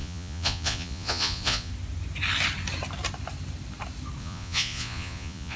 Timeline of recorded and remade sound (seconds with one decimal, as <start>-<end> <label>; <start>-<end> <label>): 0.0-1.7 remade; 1.7-4.2 recorded; 4.2-5.6 remade